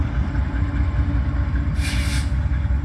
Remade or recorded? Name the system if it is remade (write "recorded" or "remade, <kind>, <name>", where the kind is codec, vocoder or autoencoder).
recorded